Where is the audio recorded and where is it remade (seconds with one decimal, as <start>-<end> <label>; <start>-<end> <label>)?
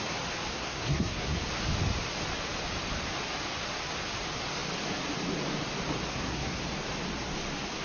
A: 0.0-0.5 recorded; 0.5-1.5 remade; 1.5-6.1 recorded; 6.1-6.6 remade; 6.6-7.8 recorded